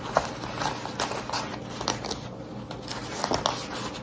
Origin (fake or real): real